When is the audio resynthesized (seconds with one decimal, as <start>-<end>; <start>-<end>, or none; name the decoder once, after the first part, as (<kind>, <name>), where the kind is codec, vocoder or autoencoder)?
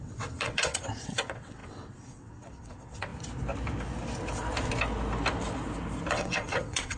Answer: 0.0-3.1 (vocoder, WaveNeXt); 6.1-7.0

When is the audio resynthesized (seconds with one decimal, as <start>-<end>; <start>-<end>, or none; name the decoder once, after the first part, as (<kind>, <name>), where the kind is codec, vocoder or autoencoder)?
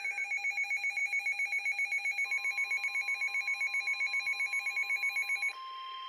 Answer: none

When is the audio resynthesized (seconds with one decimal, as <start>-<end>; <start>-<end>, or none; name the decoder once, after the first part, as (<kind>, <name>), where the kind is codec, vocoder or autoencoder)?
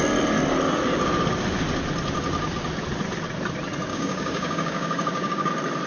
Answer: 3.9-5.5 (codec, DAC)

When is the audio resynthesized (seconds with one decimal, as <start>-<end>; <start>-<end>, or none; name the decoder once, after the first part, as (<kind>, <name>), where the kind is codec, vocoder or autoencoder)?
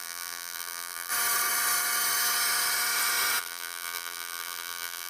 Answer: 0.0-1.1 (vocoder, BigVGAN v2); 3.4-5.1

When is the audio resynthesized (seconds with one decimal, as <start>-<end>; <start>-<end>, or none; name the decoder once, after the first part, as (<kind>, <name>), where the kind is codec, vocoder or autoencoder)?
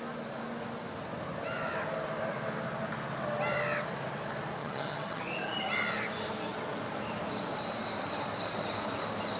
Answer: 4.6-5.2 (vocoder, HiFi-GAN)